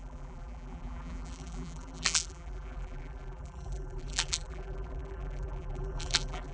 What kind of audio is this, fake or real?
fake